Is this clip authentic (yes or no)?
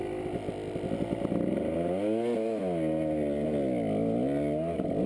yes